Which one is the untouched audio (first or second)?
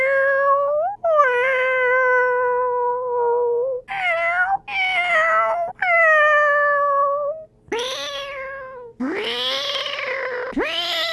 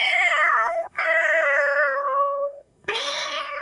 first